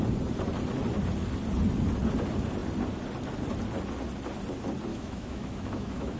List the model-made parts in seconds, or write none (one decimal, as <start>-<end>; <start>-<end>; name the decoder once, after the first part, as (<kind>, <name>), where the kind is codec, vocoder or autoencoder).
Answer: 4.9-6.2 (autoencoder, DAC-VAE)